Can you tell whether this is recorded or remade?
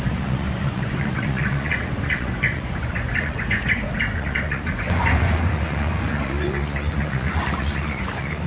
remade